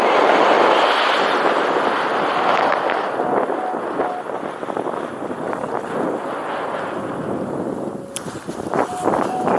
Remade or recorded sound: recorded